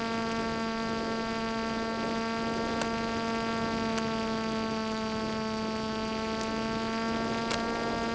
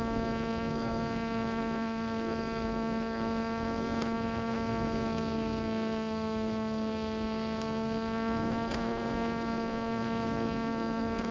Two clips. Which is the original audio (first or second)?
first